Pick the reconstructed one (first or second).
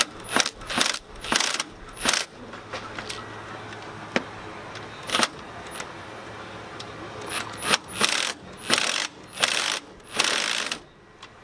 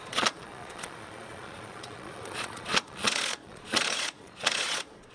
second